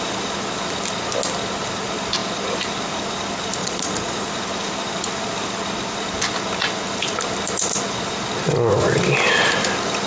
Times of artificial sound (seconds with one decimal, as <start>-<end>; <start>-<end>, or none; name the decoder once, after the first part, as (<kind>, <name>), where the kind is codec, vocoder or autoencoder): 3.6-4.3 (vocoder, Vocos)